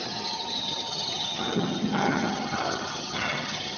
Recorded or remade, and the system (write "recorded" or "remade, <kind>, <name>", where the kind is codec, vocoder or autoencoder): remade, vocoder, HiFi-GAN